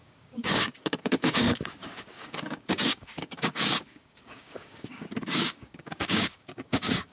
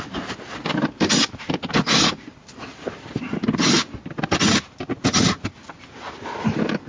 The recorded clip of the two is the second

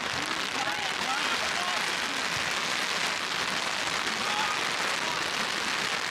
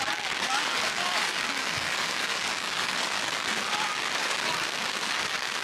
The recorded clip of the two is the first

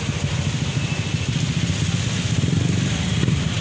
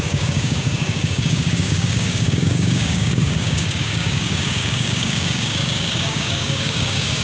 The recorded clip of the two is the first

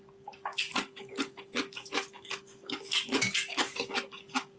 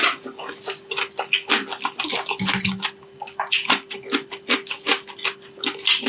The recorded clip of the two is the second